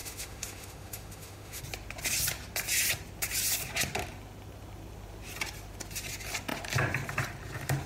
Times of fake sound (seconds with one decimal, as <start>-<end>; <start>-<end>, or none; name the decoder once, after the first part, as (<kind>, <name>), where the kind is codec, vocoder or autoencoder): 0.0-1.6 (autoencoder, DAC-VAE)